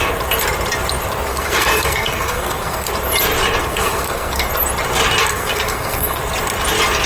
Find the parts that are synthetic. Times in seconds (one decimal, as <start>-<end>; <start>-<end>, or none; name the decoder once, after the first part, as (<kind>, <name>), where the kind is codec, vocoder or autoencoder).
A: 1.3-2.9 (codec, SNAC); 3.6-4.5; 5.2-6.2

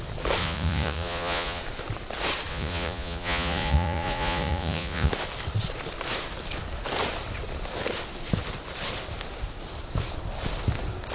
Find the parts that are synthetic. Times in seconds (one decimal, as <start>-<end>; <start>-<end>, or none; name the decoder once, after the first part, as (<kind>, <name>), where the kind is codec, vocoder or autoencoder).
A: 0.4-1.6 (vocoder, Vocos); 2.5-5.1

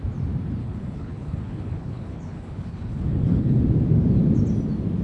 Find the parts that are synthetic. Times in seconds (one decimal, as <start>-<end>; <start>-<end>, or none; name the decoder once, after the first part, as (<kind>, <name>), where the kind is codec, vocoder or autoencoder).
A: 0.6-3.6 (codec, HILCodec)

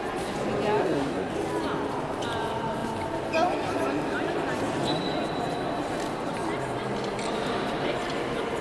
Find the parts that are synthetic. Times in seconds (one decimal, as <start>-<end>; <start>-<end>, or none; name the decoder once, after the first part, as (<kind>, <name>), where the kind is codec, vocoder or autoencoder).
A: 0.8-1.3 (codec, SNAC)

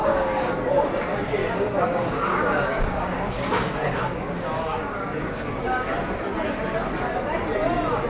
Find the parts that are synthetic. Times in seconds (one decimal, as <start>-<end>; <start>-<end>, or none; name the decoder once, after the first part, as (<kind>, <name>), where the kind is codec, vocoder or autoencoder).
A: 0.0-0.5 (codec, DAC); 1.4-5.9

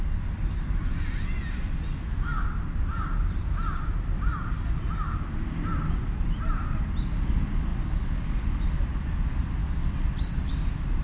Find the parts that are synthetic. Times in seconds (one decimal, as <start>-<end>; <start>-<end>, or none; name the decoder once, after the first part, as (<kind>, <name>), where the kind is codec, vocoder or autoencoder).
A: none